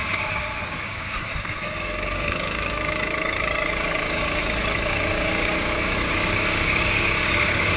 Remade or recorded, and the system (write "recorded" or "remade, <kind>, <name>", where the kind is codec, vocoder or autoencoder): remade, codec, DAC